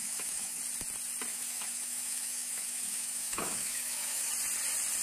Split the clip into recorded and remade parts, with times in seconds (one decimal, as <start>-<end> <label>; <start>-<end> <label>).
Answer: 0.0-0.6 remade; 0.6-1.3 recorded; 1.3-4.3 remade; 4.3-5.0 recorded